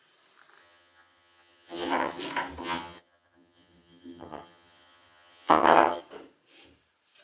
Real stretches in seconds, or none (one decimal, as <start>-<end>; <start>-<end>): 0.0-0.6; 2.2-2.6; 6.0-7.2